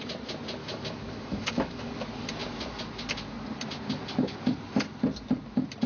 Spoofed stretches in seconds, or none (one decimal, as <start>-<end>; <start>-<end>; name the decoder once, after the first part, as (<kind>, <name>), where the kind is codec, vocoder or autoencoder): 0.6-1.9 (autoencoder, DAC-VAE)